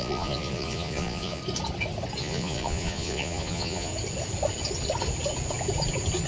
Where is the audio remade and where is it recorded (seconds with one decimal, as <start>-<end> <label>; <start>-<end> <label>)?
0.0-1.4 remade; 1.4-2.2 recorded; 2.2-3.9 remade; 3.9-6.3 recorded